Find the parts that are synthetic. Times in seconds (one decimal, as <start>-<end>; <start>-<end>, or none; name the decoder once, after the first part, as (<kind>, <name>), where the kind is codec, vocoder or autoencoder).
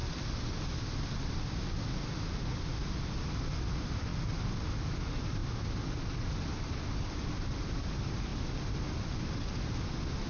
none